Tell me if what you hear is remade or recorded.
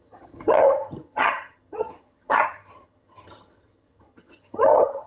remade